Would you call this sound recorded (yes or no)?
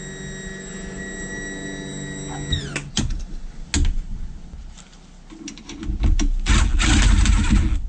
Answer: yes